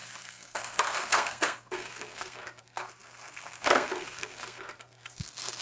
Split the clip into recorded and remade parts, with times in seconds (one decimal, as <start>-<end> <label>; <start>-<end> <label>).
0.0-5.6 remade